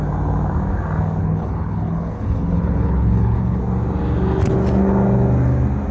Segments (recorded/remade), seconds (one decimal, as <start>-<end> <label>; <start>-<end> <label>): 0.0-1.2 recorded; 1.2-3.6 remade; 3.6-5.9 recorded

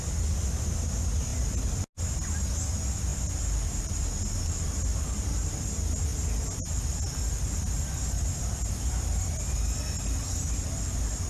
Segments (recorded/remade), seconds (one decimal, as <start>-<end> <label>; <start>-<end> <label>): 0.0-11.3 recorded